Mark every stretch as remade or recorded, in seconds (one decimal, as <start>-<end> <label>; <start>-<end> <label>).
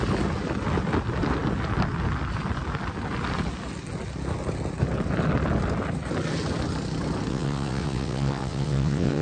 0.0-7.3 recorded; 7.3-9.2 remade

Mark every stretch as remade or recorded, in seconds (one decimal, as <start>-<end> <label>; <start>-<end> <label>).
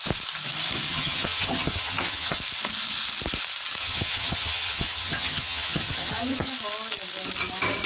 0.0-0.9 recorded; 0.9-2.4 remade; 2.4-3.8 recorded; 3.8-6.5 remade; 6.5-7.9 recorded